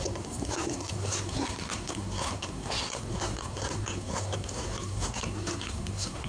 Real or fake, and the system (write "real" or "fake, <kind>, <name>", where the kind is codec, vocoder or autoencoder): fake, codec, SNAC